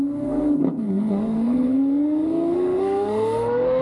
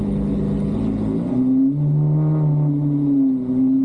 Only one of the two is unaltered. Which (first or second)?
second